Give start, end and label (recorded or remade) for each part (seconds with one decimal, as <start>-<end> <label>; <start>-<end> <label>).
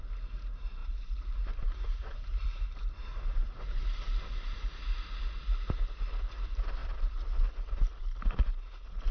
0.0-0.8 recorded; 0.8-3.8 remade; 3.8-9.1 recorded